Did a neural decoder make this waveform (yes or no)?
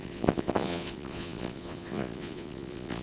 yes